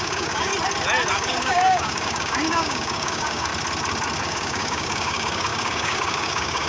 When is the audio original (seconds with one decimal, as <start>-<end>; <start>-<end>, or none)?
0.5-1.1; 3.5-4.2